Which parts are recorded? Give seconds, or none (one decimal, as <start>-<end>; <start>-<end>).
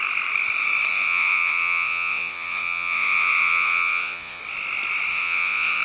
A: 0.0-0.9; 4.4-5.1